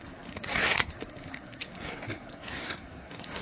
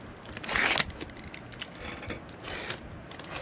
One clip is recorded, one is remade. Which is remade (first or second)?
first